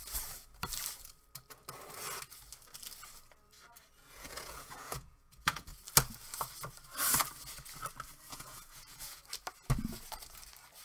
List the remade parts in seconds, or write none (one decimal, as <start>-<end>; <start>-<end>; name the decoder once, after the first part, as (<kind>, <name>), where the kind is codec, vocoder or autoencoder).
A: 4.0-5.7 (vocoder, Vocos); 8.3-9.2